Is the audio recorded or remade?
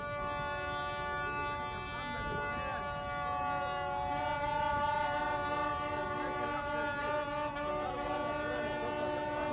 recorded